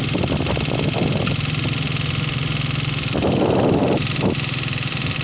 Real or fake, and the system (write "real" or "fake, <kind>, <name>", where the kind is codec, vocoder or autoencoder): real